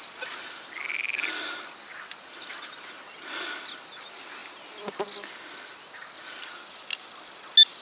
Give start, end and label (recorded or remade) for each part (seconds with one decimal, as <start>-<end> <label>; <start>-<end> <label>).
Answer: 0.0-7.8 recorded